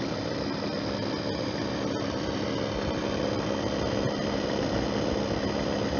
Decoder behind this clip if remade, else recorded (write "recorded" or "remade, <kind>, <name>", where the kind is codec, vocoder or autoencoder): recorded